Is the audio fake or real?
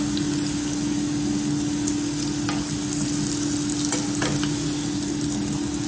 real